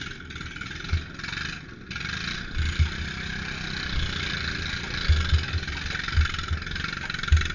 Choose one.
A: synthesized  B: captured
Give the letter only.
B